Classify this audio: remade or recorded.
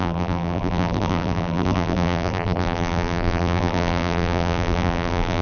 remade